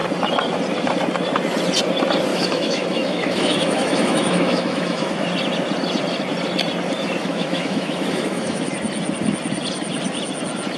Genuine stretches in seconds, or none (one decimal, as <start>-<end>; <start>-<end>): 0.0-2.3; 5.1-7.2; 8.7-10.8